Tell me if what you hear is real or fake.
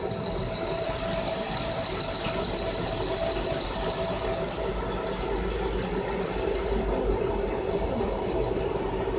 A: real